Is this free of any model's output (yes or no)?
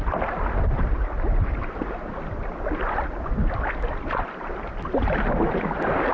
yes